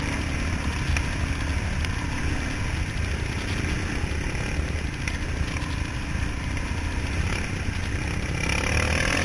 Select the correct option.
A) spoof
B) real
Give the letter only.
B